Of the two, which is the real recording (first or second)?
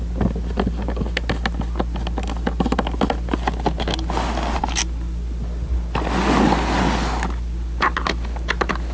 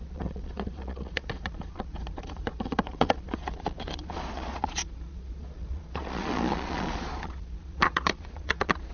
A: first